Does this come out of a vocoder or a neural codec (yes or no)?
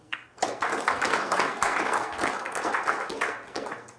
yes